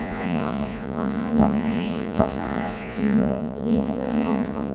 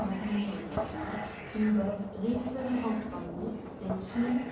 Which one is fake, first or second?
first